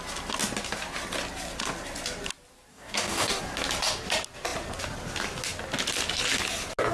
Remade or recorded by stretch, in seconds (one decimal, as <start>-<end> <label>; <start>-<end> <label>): 0.0-2.7 recorded; 2.7-3.4 remade; 3.4-6.9 recorded